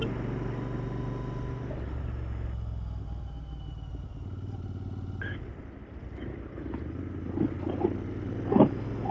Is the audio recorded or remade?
recorded